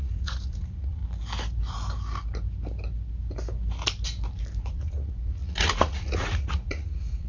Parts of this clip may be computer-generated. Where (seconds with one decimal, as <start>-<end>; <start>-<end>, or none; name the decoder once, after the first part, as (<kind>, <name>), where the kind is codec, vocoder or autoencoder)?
0.0-1.0 (vocoder, Vocos); 4.6-7.3